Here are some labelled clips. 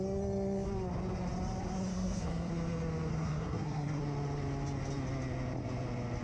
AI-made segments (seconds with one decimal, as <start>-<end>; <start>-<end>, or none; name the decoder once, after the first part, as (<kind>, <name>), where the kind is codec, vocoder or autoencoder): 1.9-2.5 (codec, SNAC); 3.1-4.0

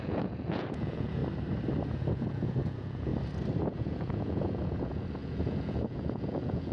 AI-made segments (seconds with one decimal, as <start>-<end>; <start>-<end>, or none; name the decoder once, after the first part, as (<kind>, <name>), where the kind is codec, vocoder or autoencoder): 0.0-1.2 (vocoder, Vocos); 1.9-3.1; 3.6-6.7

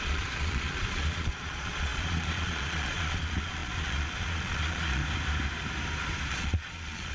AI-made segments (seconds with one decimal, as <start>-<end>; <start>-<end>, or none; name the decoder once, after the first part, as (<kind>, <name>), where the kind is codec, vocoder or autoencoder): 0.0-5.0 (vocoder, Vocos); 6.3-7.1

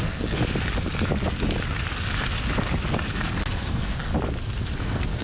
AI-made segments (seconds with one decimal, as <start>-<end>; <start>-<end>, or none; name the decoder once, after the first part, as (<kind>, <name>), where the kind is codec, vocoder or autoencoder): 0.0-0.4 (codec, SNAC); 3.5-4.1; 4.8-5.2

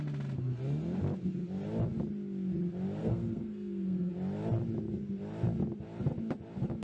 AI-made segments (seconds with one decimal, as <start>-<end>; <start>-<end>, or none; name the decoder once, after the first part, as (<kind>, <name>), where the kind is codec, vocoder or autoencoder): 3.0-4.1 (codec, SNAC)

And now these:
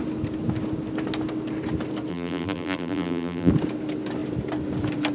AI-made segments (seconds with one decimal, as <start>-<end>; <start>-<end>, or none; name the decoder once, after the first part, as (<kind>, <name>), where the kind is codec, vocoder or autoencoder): 2.1-3.5 (vocoder, BigVGAN v2)

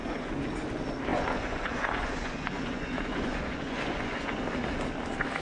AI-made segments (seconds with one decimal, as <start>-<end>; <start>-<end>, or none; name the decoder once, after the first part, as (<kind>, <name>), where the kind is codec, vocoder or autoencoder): 0.0-0.5 (vocoder, Vocos); 1.1-4.3

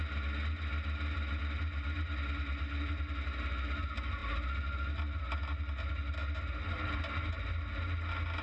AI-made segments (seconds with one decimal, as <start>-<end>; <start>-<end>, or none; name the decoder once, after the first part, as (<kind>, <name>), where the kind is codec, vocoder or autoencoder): none